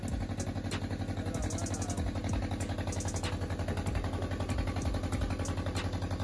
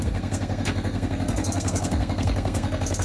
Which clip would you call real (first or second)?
first